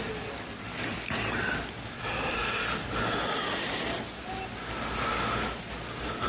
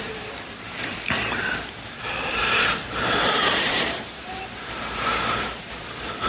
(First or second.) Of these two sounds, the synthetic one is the second